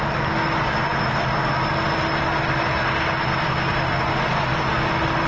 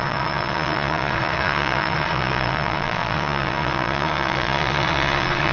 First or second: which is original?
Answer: first